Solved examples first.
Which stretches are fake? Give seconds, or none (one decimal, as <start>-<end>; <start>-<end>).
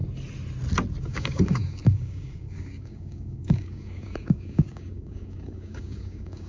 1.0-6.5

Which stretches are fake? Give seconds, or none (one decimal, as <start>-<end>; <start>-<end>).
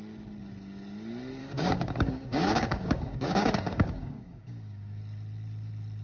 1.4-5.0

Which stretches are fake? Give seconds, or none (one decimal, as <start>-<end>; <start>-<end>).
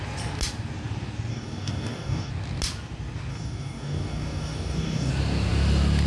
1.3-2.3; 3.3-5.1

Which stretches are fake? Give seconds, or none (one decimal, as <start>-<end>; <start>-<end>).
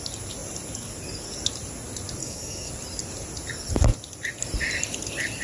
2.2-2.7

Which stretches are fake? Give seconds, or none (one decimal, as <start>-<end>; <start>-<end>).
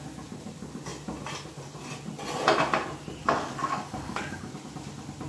3.2-4.5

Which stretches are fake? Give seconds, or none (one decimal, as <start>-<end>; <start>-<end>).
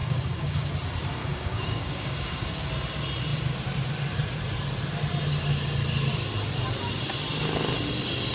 0.0-0.7; 1.2-2.6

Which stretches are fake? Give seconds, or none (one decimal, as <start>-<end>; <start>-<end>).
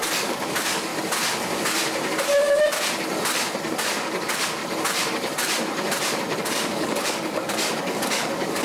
0.0-0.9; 3.8-4.6; 6.5-8.6